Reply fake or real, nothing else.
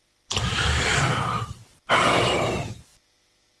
fake